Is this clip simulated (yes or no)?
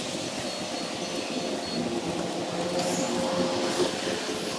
no